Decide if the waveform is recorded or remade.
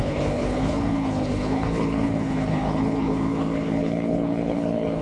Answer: remade